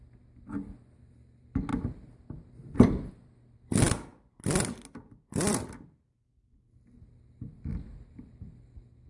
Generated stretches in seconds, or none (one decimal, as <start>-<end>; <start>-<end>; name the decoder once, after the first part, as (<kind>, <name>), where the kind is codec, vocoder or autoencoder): none